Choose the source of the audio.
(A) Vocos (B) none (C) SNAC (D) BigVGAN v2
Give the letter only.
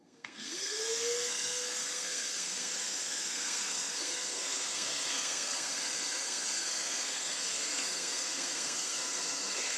C